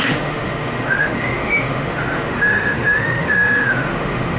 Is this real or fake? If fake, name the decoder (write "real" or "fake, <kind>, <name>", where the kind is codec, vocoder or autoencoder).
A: fake, autoencoder, DAC-VAE